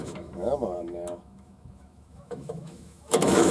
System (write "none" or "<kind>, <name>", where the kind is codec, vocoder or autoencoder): autoencoder, DAC-VAE